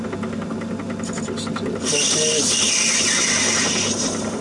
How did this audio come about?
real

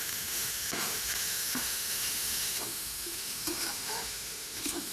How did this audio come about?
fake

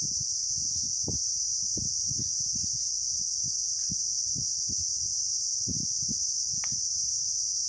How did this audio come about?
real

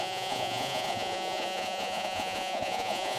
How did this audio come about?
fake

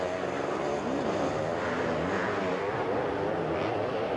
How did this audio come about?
real